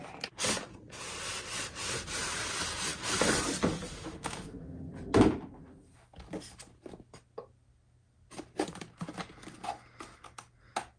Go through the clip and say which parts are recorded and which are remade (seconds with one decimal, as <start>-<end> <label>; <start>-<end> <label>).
0.0-3.9 recorded; 3.9-4.9 remade; 4.9-11.0 recorded

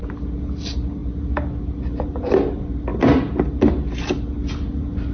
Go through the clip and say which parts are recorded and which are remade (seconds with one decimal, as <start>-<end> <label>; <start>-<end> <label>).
0.0-5.1 recorded

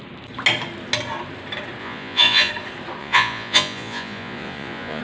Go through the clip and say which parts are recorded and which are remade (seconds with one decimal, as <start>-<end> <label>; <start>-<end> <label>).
0.0-1.8 recorded; 1.8-2.5 remade; 2.5-3.0 recorded; 3.0-5.0 remade

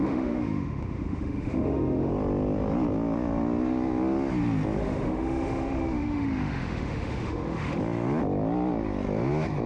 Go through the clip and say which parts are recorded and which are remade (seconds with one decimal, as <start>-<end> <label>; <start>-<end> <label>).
0.0-2.1 remade; 2.1-4.8 recorded; 4.8-7.8 remade; 7.8-9.7 recorded